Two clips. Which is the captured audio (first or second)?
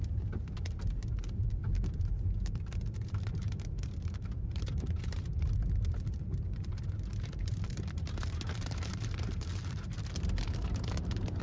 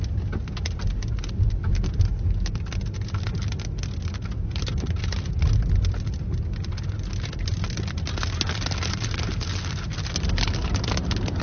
second